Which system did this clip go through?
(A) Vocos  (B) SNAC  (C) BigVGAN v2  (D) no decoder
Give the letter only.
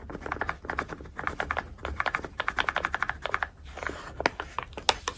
D